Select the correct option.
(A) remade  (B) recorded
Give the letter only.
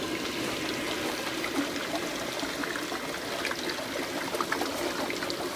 B